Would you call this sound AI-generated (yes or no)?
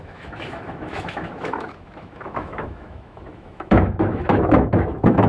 yes